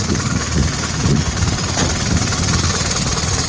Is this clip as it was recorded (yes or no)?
no